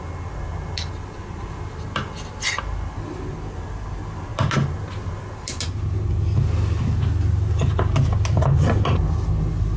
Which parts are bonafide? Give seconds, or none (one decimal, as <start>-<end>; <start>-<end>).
0.0-9.8